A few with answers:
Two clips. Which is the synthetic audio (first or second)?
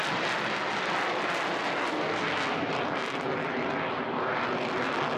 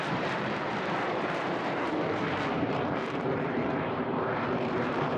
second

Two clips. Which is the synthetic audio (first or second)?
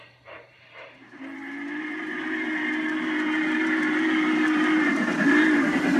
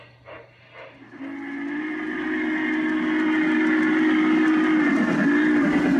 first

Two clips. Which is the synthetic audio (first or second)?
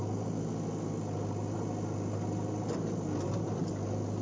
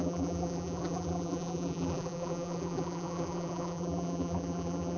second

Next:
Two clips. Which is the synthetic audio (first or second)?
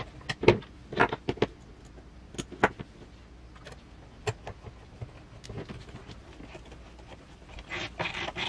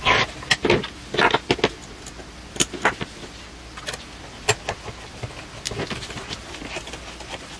second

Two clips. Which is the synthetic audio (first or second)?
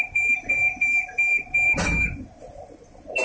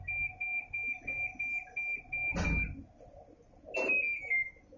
first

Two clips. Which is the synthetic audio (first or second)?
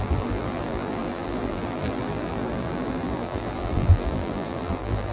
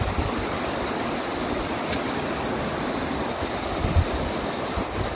first